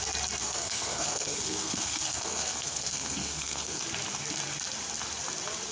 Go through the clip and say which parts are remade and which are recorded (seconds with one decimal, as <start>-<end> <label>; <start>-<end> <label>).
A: 0.0-0.4 recorded; 0.4-3.8 remade; 3.8-5.7 recorded